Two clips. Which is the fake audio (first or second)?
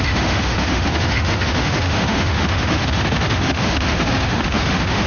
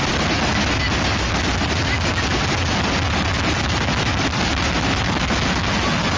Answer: first